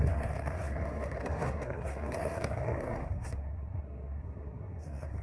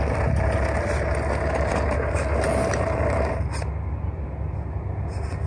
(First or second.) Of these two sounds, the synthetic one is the first